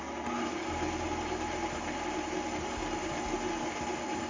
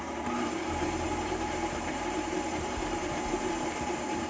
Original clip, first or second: first